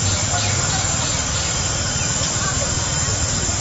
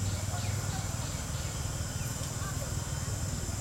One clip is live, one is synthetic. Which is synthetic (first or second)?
first